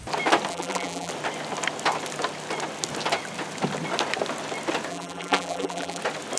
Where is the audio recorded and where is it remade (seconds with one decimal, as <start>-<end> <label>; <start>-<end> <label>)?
0.0-0.5 recorded; 0.5-1.1 remade; 1.1-4.9 recorded; 4.9-6.0 remade; 6.0-6.4 recorded

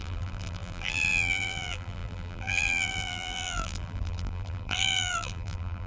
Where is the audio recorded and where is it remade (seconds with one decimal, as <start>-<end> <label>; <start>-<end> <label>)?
0.0-5.9 remade

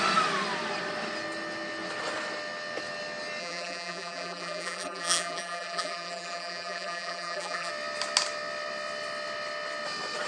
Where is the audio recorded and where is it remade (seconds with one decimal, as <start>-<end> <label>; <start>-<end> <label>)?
0.0-3.4 recorded; 3.4-7.7 remade; 7.7-10.3 recorded